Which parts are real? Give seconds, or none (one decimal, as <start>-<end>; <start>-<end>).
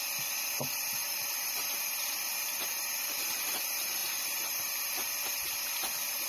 0.0-1.0; 3.6-4.0; 4.9-6.3